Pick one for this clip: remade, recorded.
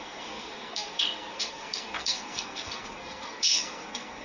remade